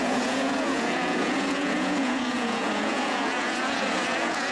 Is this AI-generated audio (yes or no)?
yes